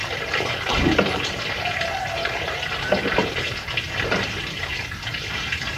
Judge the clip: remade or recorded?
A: remade